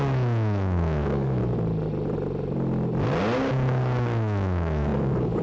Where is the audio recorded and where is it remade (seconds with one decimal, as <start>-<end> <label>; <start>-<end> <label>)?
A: 0.0-1.4 remade; 1.4-3.5 recorded; 3.5-5.4 remade